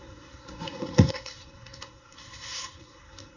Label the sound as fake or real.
fake